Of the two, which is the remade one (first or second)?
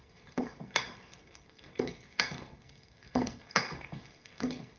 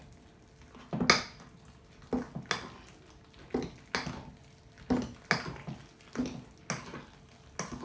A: first